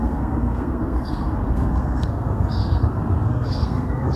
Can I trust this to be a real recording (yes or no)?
no